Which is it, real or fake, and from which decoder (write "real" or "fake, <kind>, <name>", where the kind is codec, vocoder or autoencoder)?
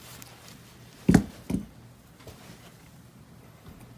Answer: real